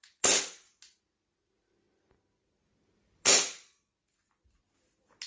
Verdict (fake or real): real